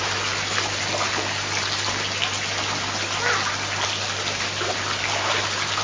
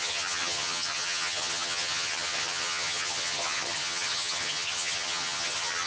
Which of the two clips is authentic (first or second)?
first